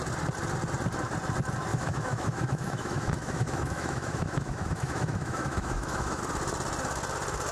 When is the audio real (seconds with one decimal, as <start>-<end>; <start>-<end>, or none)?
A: 0.0-1.7; 6.2-7.5